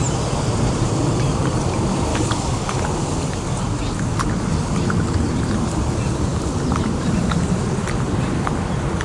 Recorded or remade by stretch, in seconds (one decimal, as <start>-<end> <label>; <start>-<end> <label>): 0.0-2.1 recorded; 2.1-2.8 remade; 2.8-9.0 recorded